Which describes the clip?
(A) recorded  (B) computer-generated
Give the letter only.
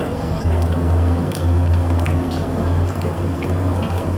B